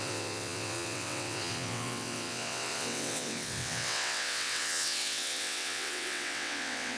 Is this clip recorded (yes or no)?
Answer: no